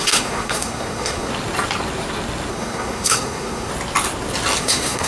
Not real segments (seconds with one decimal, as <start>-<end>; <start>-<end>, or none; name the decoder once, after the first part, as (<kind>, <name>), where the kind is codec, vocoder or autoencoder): 0.0-1.3 (codec, SNAC); 2.5-3.7; 4.6-5.1